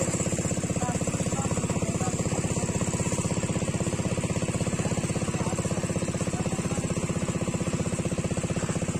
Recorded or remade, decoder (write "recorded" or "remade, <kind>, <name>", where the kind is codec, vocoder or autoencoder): recorded